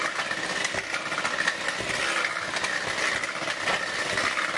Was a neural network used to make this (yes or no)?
no